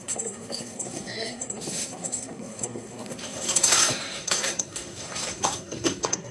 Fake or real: fake